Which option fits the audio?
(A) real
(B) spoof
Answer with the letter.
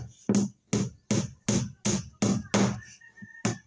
A